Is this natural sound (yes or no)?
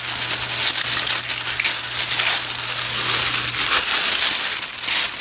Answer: yes